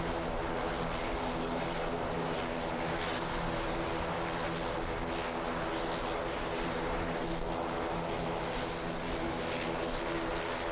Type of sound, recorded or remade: recorded